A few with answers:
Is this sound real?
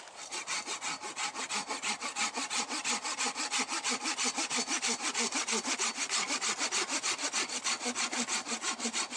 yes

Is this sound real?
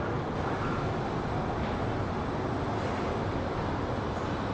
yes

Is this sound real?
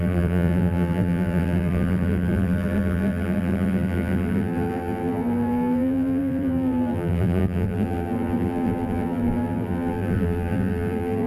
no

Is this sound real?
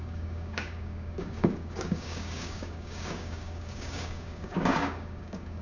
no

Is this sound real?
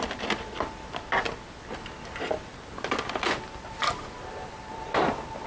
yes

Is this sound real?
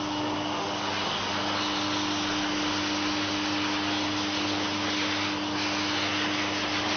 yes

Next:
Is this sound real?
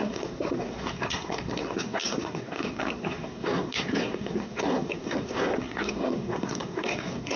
no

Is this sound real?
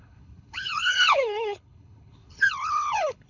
no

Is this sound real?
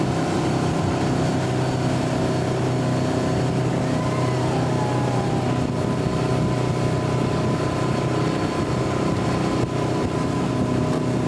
yes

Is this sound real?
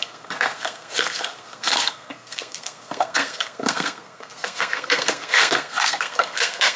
no